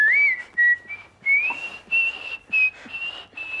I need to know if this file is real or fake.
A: real